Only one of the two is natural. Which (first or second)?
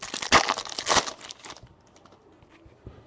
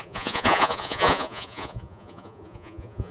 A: first